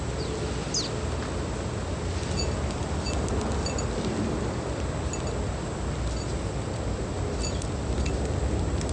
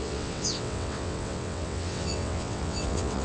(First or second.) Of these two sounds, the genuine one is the first